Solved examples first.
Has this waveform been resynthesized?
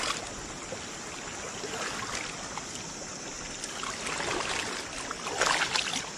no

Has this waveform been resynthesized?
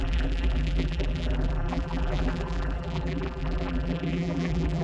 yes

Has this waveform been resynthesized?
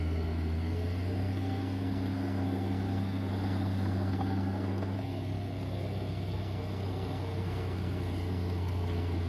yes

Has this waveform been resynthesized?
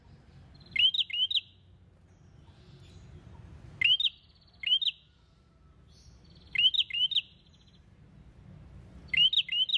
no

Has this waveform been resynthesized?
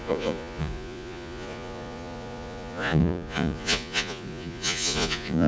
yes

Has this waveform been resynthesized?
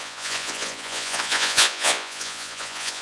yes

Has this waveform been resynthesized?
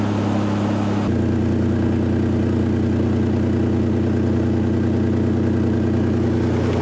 no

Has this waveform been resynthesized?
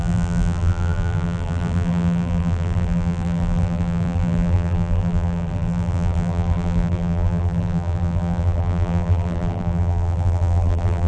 yes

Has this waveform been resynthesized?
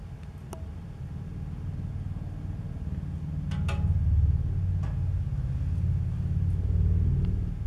no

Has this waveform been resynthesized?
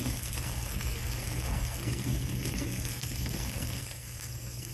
yes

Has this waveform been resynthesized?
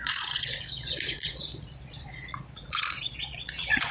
yes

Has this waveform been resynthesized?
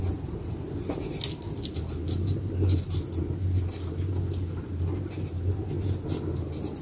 no